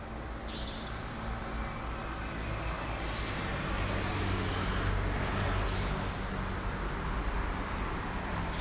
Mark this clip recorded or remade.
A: recorded